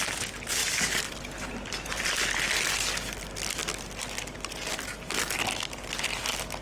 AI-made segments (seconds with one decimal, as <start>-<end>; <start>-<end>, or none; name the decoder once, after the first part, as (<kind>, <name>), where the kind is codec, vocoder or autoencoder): none